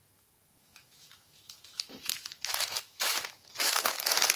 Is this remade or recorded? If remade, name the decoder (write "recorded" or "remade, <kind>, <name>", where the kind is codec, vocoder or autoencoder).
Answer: remade, autoencoder, DAC-VAE